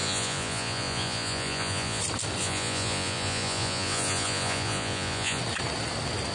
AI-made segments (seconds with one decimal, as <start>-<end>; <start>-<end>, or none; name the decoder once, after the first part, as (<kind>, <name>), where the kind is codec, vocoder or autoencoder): 0.0-2.0 (vocoder, Vocos); 2.4-5.4